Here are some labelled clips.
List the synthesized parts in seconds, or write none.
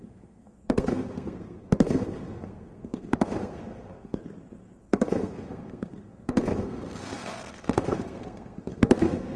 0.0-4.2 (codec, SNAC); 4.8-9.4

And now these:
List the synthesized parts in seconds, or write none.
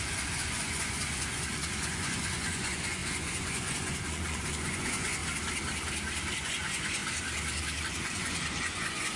0.0-5.2 (vocoder, Vocos); 6.4-7.0; 7.8-9.2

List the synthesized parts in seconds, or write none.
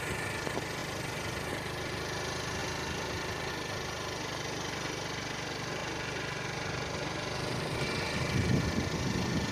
0.8-1.5 (vocoder, BigVGAN v2); 5.8-7.9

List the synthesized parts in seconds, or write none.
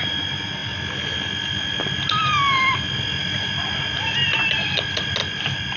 none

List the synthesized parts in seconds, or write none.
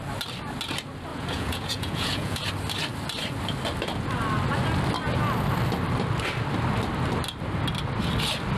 1.1-2.5 (vocoder, Vocos)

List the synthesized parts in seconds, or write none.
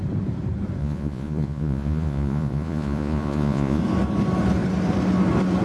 0.8-3.8 (vocoder, Vocos)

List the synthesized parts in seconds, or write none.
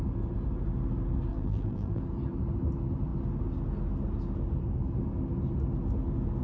1.3-2.0 (vocoder, BigVGAN v2)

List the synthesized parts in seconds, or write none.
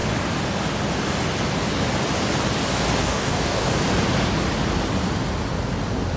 3.0-3.7 (codec, DAC)